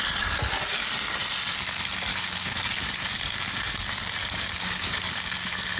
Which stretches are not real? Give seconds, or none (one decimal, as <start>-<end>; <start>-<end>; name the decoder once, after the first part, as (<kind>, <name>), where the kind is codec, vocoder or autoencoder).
2.1-3.3 (codec, DAC); 4.2-5.1